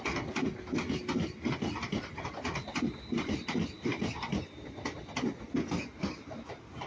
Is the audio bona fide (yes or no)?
yes